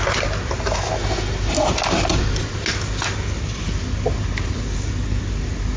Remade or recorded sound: recorded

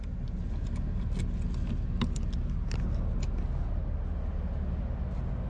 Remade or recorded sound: recorded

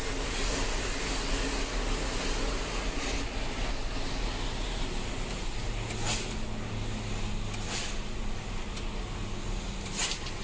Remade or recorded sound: recorded